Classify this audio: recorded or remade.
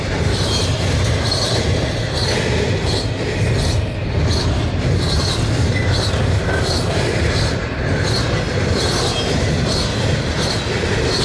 recorded